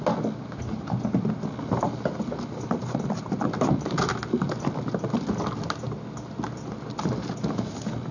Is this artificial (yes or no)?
no